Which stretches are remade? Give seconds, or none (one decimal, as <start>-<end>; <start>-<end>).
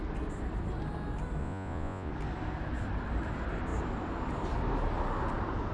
1.4-2.1